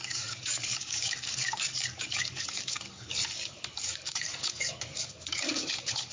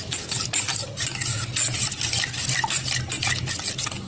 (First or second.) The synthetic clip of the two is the first